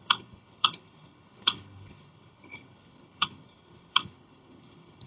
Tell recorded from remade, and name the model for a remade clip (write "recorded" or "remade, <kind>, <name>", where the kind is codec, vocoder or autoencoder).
remade, codec, HILCodec